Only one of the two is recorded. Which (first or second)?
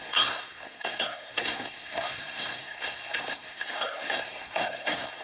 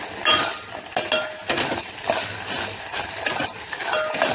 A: second